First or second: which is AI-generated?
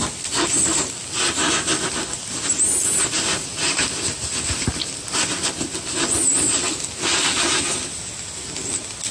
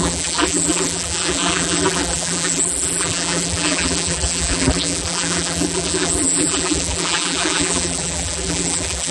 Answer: second